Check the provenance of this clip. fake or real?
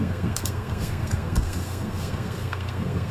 fake